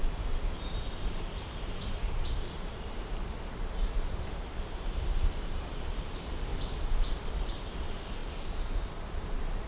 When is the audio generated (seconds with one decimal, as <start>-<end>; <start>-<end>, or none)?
0.0-6.5; 7.5-8.2; 9.2-9.7